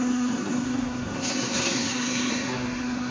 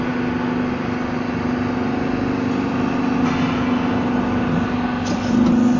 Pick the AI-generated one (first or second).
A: first